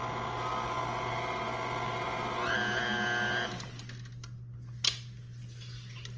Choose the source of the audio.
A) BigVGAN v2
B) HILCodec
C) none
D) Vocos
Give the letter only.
C